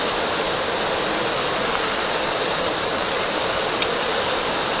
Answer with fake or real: real